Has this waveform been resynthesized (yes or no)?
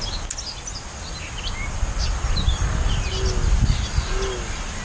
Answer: no